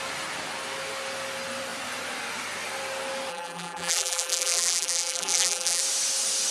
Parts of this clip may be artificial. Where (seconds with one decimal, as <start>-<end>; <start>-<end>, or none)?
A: 3.3-5.8